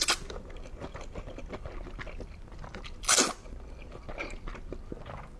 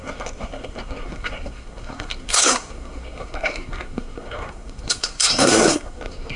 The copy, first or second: second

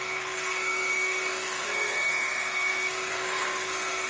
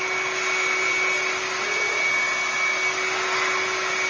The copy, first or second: first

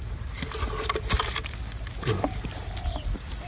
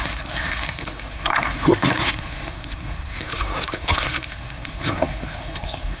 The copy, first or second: second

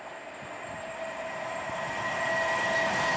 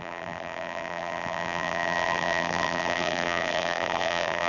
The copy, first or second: second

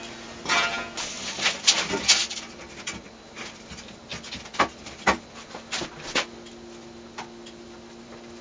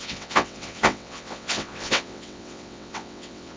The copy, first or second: second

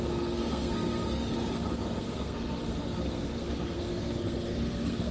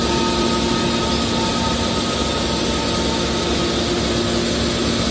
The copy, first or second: first